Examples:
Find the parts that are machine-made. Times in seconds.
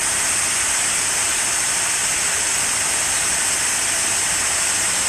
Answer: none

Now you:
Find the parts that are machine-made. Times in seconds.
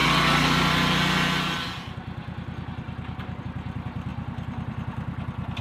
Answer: none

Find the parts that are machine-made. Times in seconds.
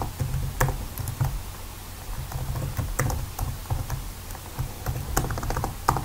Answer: none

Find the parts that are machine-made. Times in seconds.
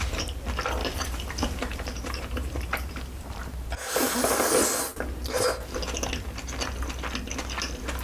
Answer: 0.8-3.5 (vocoder, BigVGAN v2)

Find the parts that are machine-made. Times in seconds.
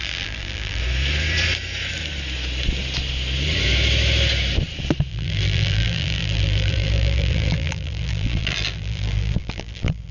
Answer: 0.0-0.8 (vocoder, BigVGAN v2); 5.1-10.1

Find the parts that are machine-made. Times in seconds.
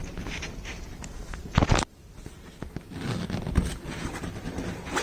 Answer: none